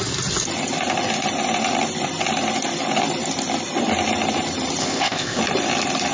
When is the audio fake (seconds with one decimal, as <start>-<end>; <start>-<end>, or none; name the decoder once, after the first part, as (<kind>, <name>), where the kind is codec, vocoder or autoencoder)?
4.8-5.4 (codec, ZipCodec)

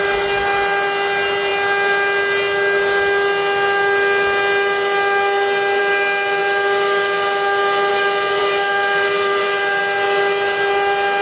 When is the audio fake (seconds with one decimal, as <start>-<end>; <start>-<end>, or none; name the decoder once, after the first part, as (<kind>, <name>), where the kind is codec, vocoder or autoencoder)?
8.4-9.8 (vocoder, BigVGAN v2)